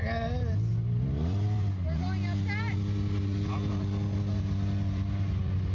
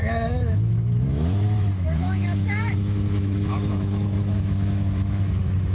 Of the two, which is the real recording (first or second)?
first